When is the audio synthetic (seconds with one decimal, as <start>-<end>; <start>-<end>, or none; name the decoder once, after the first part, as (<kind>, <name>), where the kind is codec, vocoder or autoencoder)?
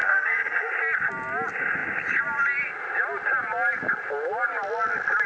0.0-0.7 (codec, SNAC)